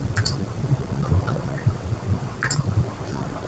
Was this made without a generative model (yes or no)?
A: no